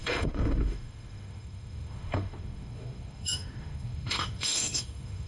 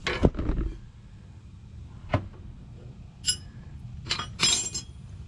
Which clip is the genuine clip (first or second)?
second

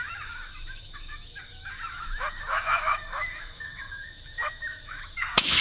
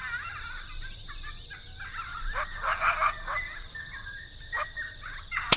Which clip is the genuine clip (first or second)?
second